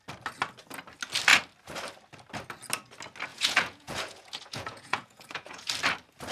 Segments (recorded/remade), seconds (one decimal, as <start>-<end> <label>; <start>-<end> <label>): 0.0-3.3 recorded; 3.3-5.7 remade; 5.7-6.3 recorded

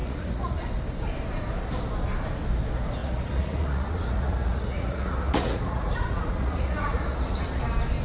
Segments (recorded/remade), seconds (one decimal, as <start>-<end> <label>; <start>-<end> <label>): 0.0-0.6 remade; 0.6-3.0 recorded; 3.0-7.6 remade; 7.6-8.0 recorded

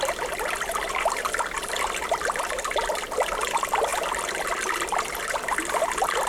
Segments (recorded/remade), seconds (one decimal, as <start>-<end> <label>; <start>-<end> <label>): 0.0-6.3 recorded

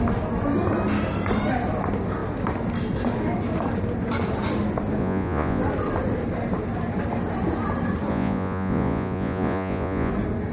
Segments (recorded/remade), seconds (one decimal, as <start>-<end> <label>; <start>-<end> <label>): 0.0-5.0 recorded; 5.0-5.6 remade; 5.6-8.1 recorded; 8.1-10.1 remade; 10.1-10.5 recorded

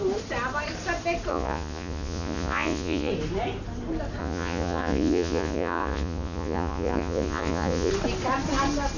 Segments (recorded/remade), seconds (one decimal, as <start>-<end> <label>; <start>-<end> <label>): 0.0-1.3 recorded; 1.3-3.1 remade; 3.1-4.2 recorded; 4.2-7.9 remade; 7.9-9.0 recorded

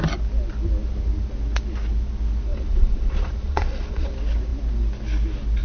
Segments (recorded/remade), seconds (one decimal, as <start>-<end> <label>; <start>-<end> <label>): 0.0-2.5 recorded; 2.5-4.1 remade; 4.1-5.6 recorded